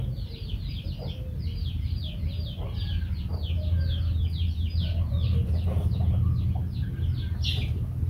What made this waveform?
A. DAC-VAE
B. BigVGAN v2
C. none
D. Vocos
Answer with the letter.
C